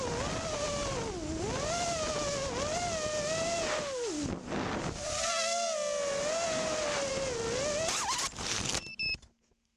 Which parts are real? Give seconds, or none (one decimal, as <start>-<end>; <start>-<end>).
0.0-8.9